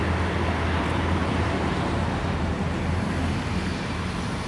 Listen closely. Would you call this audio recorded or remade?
recorded